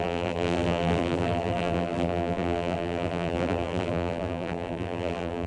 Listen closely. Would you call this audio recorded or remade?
remade